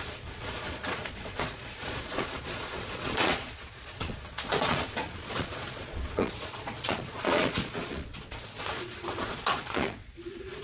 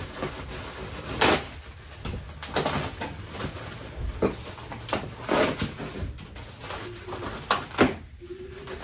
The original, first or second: second